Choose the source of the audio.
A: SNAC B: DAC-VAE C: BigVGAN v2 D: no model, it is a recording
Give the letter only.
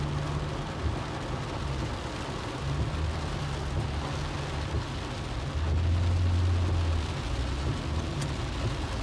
D